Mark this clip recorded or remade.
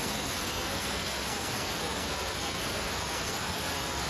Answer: remade